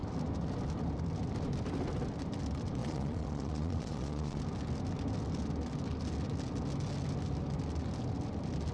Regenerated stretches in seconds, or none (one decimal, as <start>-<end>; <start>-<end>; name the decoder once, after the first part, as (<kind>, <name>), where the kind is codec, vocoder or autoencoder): 2.8-4.4 (vocoder, Vocos)